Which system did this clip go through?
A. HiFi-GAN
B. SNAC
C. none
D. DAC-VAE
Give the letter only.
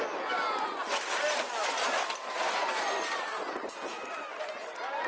C